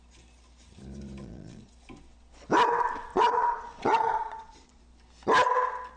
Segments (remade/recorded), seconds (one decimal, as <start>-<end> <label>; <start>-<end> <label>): 0.0-1.2 recorded; 1.2-1.7 remade; 1.7-3.1 recorded; 3.1-4.8 remade; 4.8-6.0 recorded